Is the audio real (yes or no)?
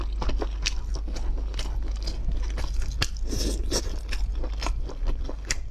yes